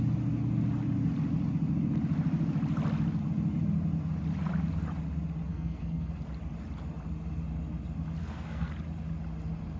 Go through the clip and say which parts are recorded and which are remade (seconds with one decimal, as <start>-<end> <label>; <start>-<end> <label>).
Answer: 0.0-5.5 recorded; 5.5-6.1 remade; 6.1-8.2 recorded; 8.2-8.7 remade; 8.7-9.8 recorded